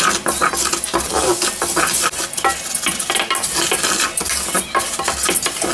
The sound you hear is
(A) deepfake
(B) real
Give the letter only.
B